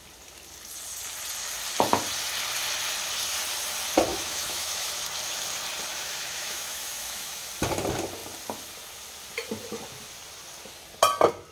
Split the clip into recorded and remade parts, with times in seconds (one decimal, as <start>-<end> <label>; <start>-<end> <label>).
0.0-4.1 recorded; 4.1-4.9 remade; 4.9-5.9 recorded; 5.9-7.5 remade; 7.5-11.5 recorded